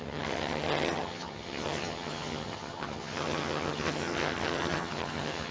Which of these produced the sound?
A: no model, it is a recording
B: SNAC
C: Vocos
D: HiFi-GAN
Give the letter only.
D